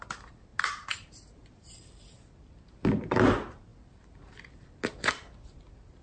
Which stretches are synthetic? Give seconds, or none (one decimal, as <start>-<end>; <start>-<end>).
none